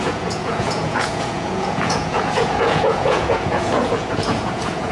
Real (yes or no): no